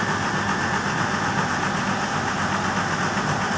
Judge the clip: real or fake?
real